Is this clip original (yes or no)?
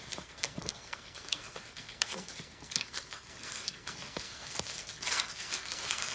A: no